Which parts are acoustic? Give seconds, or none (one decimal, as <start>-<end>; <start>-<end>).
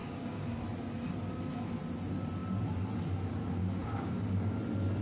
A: 0.6-3.6; 4.6-5.0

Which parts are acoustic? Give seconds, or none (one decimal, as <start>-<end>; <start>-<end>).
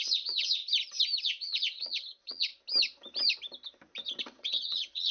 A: 0.6-1.2; 2.5-4.2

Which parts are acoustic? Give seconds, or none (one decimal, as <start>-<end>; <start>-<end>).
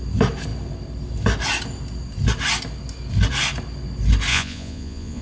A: 0.0-4.3